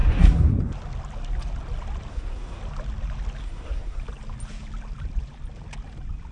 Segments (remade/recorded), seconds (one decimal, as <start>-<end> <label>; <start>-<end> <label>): 0.0-0.6 remade; 0.6-2.1 recorded; 2.1-2.6 remade; 2.6-3.4 recorded; 3.4-4.0 remade; 4.0-6.3 recorded